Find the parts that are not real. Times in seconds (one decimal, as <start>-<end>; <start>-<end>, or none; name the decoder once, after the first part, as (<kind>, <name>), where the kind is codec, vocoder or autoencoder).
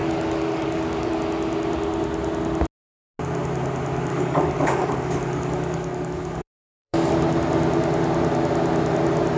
0.0-1.2 (codec, DAC); 4.1-7.1